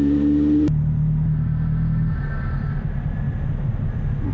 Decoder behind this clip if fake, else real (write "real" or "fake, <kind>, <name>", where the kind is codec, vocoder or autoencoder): real